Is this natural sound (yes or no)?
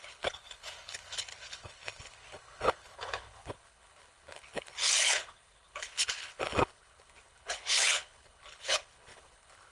no